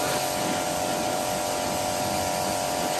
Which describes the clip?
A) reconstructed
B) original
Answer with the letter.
B